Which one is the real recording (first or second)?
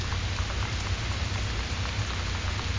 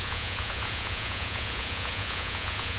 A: first